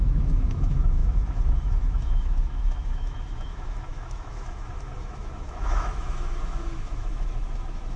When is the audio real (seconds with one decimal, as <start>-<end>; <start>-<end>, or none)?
none

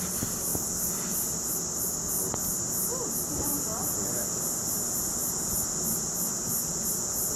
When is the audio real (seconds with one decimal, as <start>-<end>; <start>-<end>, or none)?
0.0-7.4

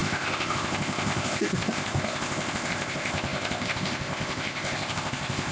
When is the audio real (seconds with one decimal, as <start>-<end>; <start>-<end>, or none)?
none

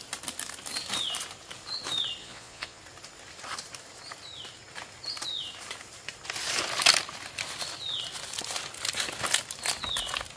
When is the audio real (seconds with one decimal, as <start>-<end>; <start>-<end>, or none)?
0.0-2.2; 2.8-10.4

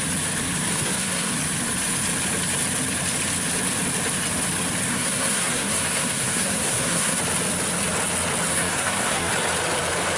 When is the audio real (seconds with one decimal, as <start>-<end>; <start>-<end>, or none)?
0.0-0.7; 1.3-4.9; 7.2-8.5; 9.3-10.2

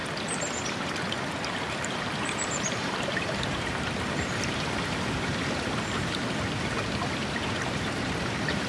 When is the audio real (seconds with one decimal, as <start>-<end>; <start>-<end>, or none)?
0.0-0.7

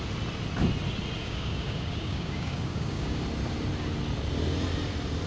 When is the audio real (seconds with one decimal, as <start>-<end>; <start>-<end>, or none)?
0.0-1.2; 3.2-5.3